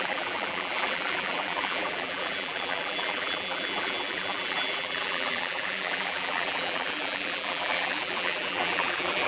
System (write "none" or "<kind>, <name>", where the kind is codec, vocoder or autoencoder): vocoder, BigVGAN v2